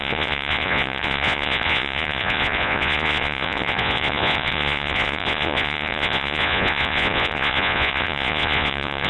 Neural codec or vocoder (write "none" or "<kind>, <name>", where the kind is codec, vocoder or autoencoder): vocoder, Vocos